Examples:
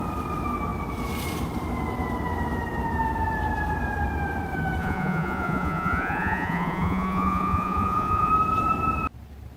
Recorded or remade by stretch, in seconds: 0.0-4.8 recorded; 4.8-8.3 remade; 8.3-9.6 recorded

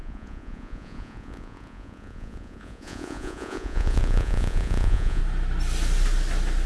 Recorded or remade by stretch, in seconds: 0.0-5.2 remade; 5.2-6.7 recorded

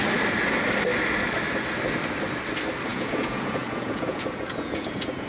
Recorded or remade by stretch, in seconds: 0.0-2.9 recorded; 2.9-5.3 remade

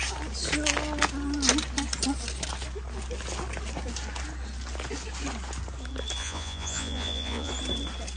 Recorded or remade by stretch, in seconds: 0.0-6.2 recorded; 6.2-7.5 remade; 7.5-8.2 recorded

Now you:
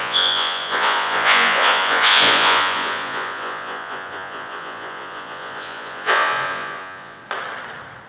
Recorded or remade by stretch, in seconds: 0.0-7.2 remade; 7.2-8.1 recorded